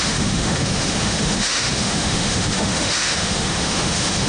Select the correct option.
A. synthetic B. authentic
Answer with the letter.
A